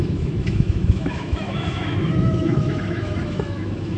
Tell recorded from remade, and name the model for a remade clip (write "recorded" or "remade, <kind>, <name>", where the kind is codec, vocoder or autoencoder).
remade, autoencoder, DAC-VAE